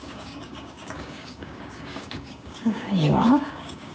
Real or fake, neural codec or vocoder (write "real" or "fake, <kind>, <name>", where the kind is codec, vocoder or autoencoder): fake, codec, DAC